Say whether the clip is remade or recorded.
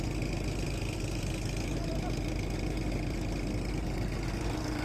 recorded